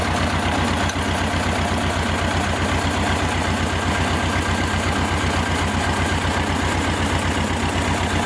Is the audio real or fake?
real